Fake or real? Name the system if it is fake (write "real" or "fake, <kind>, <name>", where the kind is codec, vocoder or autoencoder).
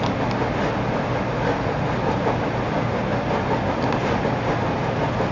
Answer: real